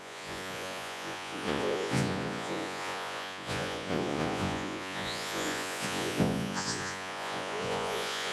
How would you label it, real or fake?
fake